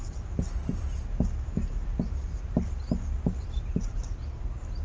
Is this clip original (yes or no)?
yes